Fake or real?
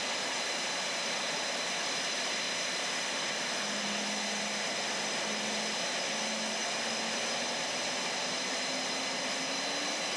real